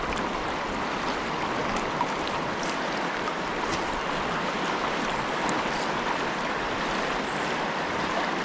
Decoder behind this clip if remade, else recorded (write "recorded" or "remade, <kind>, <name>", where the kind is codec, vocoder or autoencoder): recorded